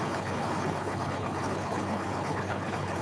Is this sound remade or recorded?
remade